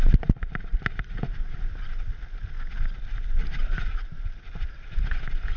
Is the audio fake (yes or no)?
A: no